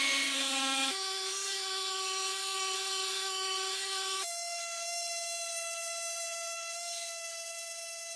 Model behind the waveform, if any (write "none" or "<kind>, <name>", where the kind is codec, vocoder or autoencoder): autoencoder, DAC-VAE